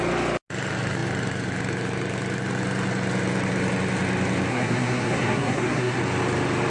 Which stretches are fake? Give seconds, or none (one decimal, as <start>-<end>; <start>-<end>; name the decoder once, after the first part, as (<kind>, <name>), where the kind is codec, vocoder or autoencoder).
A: 4.5-6.0 (codec, SNAC)